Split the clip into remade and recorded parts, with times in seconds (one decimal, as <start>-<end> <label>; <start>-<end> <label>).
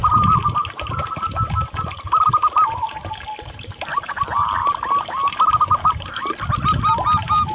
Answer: 0.0-7.5 recorded